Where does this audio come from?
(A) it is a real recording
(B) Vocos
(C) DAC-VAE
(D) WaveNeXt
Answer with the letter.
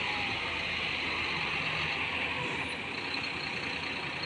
A